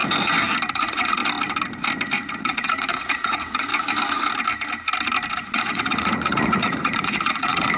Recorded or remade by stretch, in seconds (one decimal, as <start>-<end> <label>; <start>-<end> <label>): 0.0-0.7 recorded; 0.7-1.2 remade; 1.2-2.4 recorded; 2.4-3.7 remade; 3.7-5.4 recorded; 5.4-7.8 remade